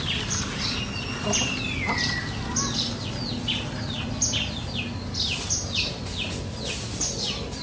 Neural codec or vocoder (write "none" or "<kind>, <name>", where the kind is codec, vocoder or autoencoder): none